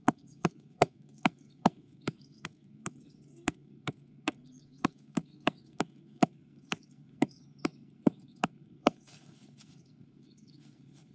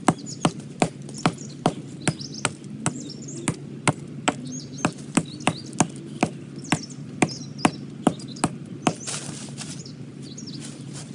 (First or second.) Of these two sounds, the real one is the second